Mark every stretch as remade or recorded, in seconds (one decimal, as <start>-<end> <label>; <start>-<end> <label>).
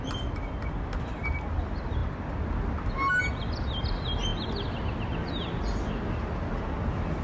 0.0-7.2 recorded